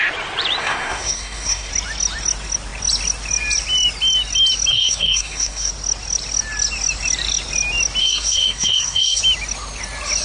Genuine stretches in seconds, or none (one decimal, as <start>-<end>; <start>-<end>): 0.0-0.6; 1.7-4.7; 5.7-8.0; 9.2-10.2

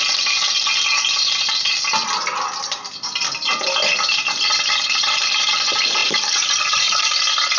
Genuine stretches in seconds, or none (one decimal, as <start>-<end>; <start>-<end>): 0.0-6.0; 7.0-7.6

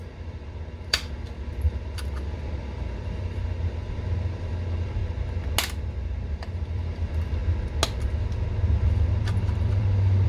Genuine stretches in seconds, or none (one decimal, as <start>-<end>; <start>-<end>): 5.0-6.3; 7.4-8.8

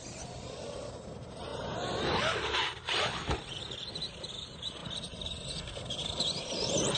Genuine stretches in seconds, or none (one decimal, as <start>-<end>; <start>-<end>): 0.0-7.0

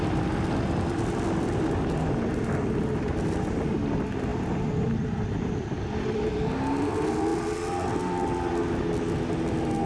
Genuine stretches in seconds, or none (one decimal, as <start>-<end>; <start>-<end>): 0.0-9.9

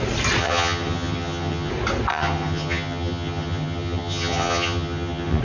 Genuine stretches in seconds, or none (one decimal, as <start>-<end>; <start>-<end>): 0.0-0.4; 1.7-2.1

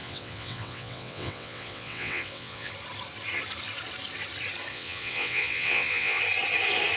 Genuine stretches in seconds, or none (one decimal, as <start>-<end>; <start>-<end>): 2.7-4.7; 6.2-7.0

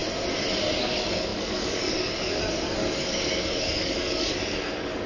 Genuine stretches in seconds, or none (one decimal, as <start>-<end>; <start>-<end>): 0.0-0.8